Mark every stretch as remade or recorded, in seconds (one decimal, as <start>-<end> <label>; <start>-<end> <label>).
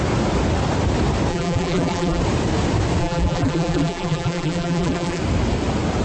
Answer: 0.0-1.3 recorded; 1.3-2.2 remade; 2.2-3.0 recorded; 3.0-5.2 remade; 5.2-6.0 recorded